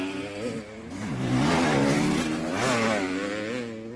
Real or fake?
real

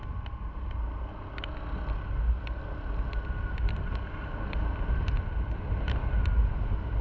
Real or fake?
real